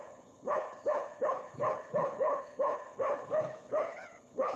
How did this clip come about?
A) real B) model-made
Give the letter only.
B